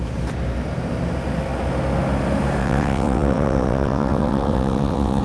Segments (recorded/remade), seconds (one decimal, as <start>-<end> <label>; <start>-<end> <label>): 0.0-2.6 recorded; 2.6-5.2 remade